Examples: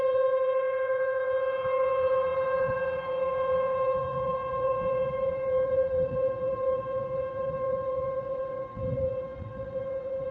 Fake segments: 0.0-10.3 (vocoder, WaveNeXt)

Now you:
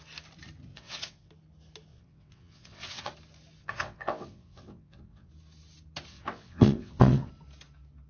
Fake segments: 0.7-1.3 (vocoder, WaveNeXt); 1.9-3.1; 3.6-5.3; 6.1-7.3

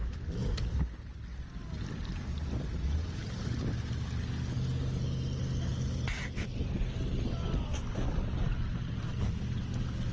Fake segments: none

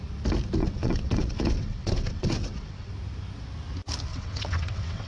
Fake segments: 0.6-2.9 (vocoder, WaveNeXt); 4.1-5.1

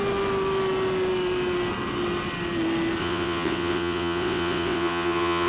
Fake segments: 3.0-5.5 (vocoder, WaveNeXt)

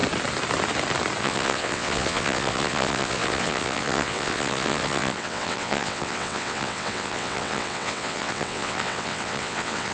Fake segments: 1.2-9.9 (vocoder, WaveNeXt)